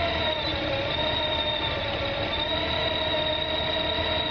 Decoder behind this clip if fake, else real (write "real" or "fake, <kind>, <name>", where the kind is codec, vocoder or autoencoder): real